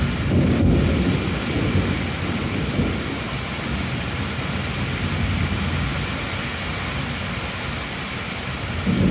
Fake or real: real